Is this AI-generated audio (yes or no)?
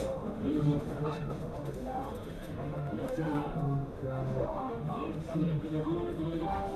yes